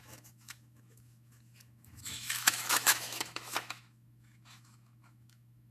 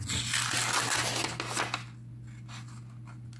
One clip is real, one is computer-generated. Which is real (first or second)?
second